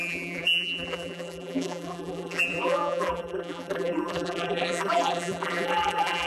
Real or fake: fake